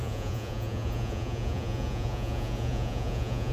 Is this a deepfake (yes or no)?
yes